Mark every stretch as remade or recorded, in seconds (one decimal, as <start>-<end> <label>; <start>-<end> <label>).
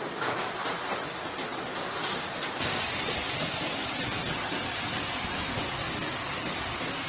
0.0-7.1 recorded